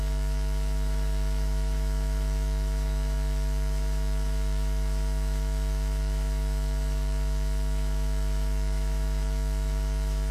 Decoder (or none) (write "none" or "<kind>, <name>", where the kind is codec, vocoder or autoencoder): autoencoder, DAC-VAE